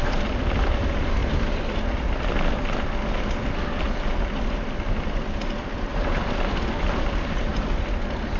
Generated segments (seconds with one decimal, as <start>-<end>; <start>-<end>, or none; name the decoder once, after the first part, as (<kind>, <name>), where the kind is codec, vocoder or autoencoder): 5.9-6.6 (vocoder, BigVGAN v2)